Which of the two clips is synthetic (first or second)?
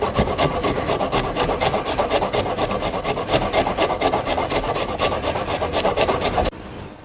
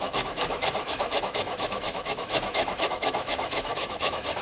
second